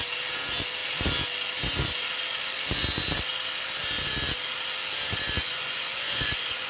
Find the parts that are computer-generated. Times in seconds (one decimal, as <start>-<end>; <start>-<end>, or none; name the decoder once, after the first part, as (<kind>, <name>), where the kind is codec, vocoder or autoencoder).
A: 5.4-6.7 (vocoder, Vocos)